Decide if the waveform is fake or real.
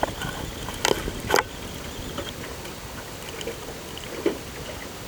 real